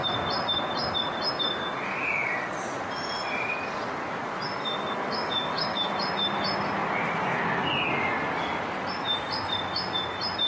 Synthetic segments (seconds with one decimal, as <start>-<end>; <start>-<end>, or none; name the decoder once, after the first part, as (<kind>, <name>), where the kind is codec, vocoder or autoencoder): 4.6-5.9 (autoencoder, DAC-VAE)